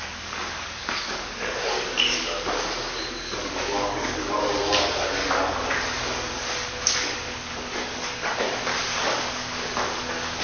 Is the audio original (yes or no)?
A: no